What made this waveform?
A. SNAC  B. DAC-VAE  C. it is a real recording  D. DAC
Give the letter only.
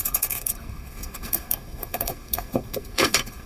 A